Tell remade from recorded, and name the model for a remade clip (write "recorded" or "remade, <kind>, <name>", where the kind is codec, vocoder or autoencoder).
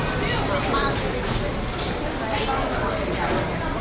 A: recorded